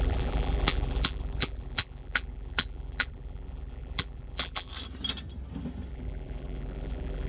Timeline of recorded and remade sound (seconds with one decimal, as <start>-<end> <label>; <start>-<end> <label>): 0.0-4.7 remade; 4.7-5.9 recorded; 5.9-7.3 remade